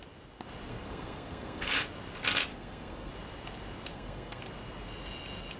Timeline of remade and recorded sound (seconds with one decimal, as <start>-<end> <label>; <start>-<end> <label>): 0.0-0.7 recorded; 0.7-1.7 remade; 1.7-2.5 recorded; 2.5-3.1 remade; 3.1-3.9 recorded; 3.9-4.4 remade; 4.4-5.6 recorded